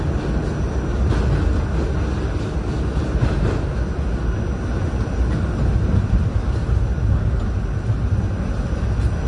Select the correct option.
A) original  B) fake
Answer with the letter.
A